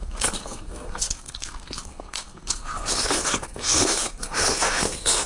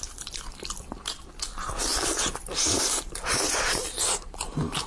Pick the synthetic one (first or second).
first